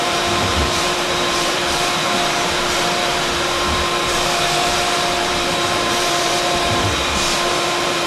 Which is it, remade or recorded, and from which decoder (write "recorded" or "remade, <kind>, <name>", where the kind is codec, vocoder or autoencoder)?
remade, vocoder, BigVGAN v2